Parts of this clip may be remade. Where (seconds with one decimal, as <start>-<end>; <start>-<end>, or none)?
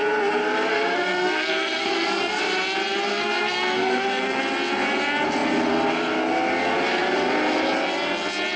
0.7-2.4; 3.1-4.4